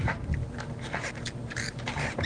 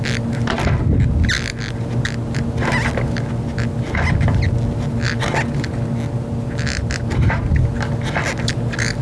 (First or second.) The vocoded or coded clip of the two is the first